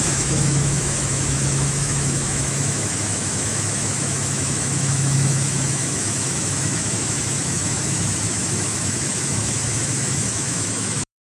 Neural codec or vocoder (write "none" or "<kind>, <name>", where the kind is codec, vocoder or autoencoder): autoencoder, DAC-VAE